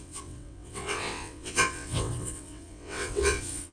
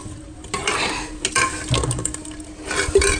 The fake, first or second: first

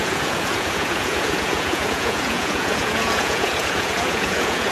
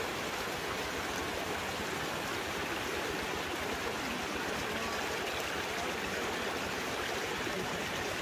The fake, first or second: first